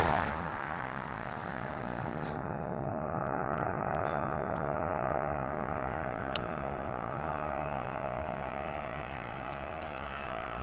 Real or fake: fake